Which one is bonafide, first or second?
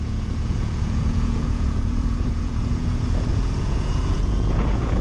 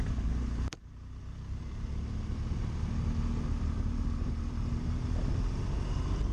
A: second